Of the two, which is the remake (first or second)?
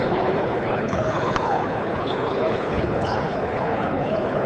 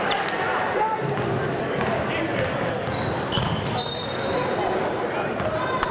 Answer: first